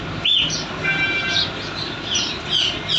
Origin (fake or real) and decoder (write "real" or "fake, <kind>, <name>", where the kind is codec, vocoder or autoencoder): real